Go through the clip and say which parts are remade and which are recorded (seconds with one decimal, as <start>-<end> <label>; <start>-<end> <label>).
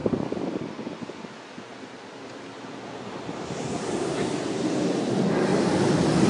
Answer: 0.0-6.3 recorded